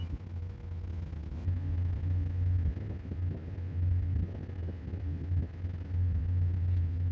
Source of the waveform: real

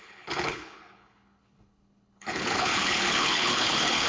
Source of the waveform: fake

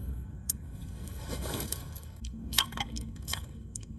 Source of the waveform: fake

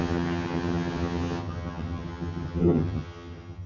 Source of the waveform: fake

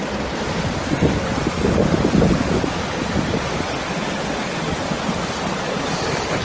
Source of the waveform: real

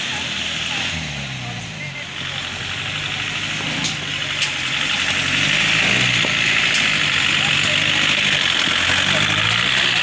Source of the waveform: real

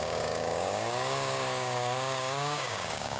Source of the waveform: fake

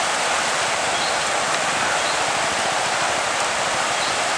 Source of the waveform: real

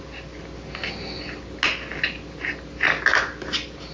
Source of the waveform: real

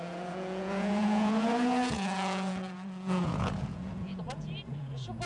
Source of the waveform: fake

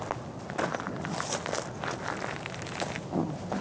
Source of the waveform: real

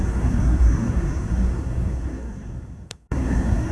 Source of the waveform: fake